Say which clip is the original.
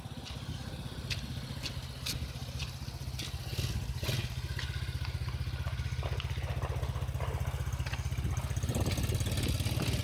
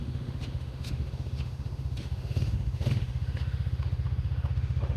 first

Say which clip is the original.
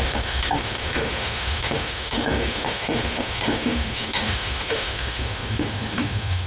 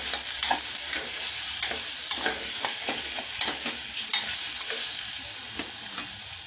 second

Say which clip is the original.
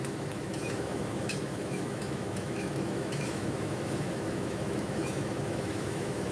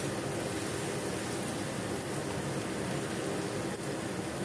second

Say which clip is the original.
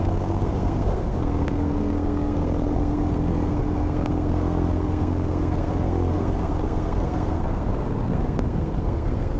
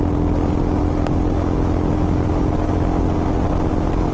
second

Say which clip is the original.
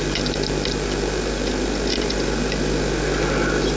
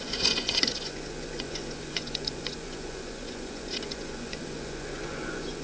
first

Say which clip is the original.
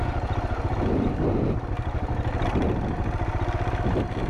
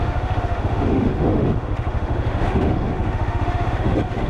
first